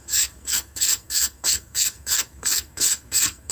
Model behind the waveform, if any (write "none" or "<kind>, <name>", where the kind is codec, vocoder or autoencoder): codec, SNAC